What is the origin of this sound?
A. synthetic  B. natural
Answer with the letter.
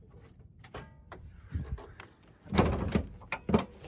B